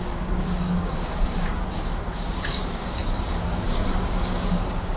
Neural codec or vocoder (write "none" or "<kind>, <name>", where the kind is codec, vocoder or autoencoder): codec, DAC